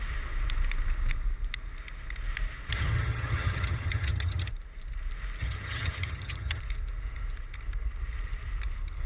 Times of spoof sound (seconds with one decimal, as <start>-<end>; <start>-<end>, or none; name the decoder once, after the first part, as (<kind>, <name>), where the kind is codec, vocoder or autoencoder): 2.7-4.5 (vocoder, HiFi-GAN); 5.4-6.6